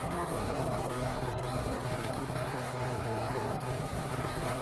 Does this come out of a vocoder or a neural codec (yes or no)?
yes